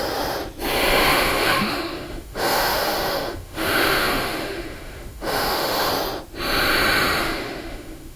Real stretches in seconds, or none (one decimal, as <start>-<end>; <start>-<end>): 0.0-1.0; 5.9-7.2